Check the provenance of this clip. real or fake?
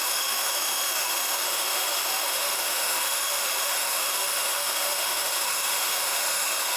fake